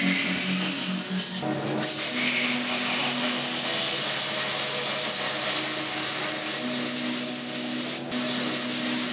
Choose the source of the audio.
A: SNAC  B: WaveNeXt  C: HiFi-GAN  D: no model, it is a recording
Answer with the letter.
D